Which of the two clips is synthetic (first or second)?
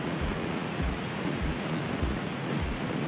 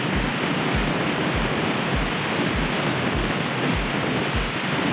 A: first